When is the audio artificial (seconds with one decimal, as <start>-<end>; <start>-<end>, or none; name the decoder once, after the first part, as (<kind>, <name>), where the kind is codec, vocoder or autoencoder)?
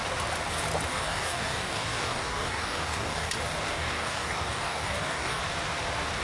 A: 0.9-3.3 (codec, DAC); 3.7-5.4